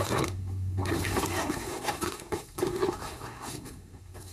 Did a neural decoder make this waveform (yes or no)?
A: yes